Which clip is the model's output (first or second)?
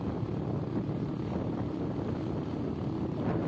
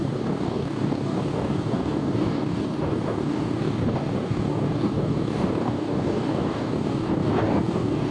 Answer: second